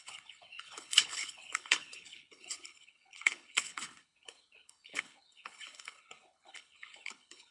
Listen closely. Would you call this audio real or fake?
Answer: fake